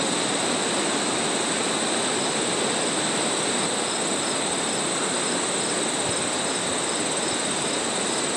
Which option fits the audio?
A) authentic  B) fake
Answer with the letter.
A